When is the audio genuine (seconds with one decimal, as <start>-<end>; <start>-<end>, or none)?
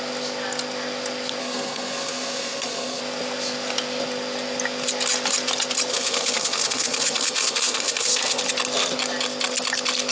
0.0-1.4; 3.0-5.9; 8.4-10.1